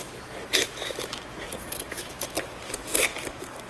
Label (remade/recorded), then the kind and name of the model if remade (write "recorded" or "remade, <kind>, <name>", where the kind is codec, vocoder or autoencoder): remade, autoencoder, DAC-VAE